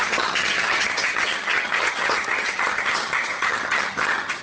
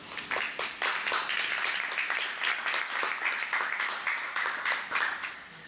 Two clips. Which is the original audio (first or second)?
second